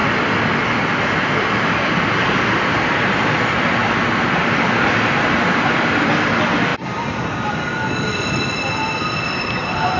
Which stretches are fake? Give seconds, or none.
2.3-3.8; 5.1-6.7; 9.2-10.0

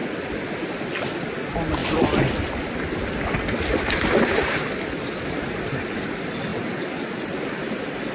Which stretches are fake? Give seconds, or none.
0.0-1.3; 1.8-5.4